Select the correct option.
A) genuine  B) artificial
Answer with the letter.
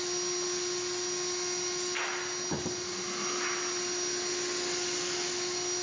A